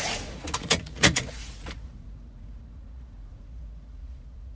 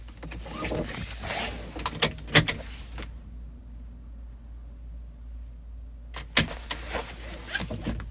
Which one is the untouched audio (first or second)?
second